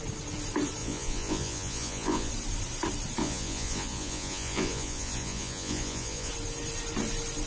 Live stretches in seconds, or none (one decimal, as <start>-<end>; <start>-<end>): 0.0-0.8; 2.3-3.2; 6.3-7.5